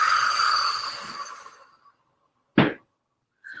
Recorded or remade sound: recorded